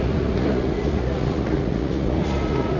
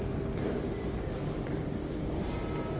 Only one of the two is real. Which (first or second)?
second